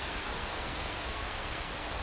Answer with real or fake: fake